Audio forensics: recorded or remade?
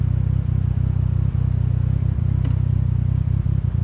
recorded